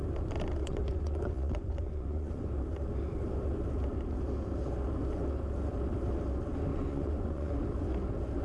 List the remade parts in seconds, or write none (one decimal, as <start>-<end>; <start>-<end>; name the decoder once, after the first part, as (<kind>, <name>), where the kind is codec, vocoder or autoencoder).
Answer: 0.6-2.5 (vocoder, Vocos); 6.7-7.5